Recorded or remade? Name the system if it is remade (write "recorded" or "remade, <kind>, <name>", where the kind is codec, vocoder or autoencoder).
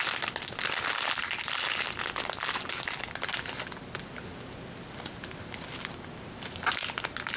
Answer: recorded